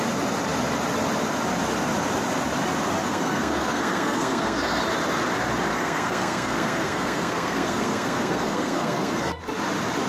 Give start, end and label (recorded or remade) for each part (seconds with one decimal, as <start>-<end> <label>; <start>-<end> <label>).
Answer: 0.0-3.0 recorded; 3.0-4.8 remade; 4.8-5.7 recorded; 5.7-9.4 remade; 9.4-10.1 recorded